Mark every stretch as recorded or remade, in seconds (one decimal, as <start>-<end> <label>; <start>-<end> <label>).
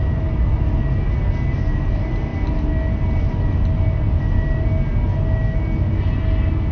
0.0-6.7 recorded